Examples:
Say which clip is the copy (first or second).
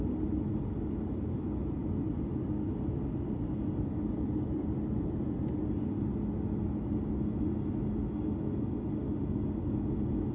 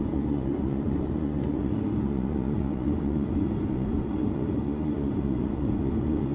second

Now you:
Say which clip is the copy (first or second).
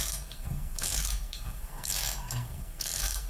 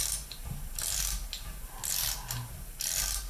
first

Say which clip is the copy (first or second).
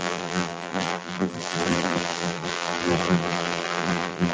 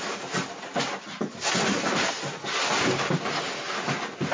first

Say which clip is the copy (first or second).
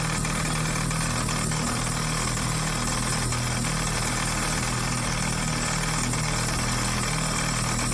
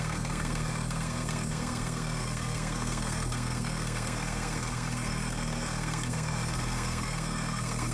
second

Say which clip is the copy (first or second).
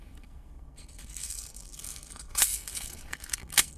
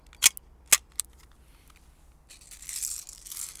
first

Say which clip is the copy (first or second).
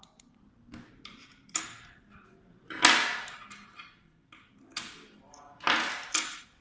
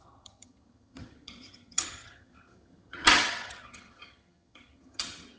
second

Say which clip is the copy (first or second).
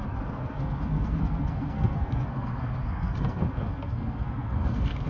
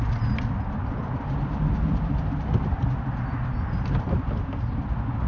first